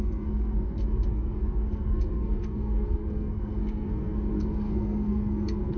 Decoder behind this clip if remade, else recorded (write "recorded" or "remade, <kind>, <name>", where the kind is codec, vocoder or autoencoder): remade, codec, SNAC